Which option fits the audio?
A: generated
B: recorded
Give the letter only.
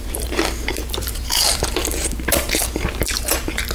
A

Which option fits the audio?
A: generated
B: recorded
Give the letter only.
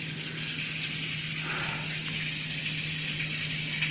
B